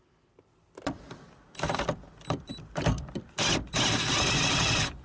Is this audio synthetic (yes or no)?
yes